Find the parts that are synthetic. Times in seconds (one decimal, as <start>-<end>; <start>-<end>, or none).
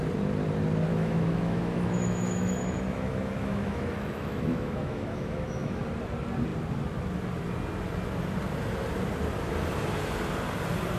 0.9-5.8